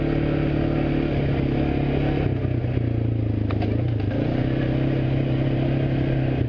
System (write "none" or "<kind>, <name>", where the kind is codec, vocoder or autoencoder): none